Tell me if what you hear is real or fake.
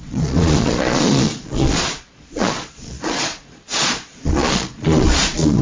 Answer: fake